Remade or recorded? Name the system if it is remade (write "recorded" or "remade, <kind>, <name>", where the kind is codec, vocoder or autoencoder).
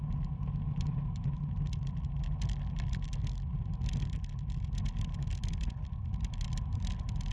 recorded